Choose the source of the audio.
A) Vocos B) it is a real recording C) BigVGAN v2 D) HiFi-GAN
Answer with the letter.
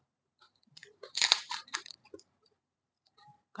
C